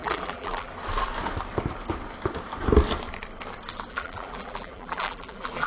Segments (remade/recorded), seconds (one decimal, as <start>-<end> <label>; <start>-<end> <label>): 0.0-0.7 remade; 0.7-3.9 recorded; 3.9-5.7 remade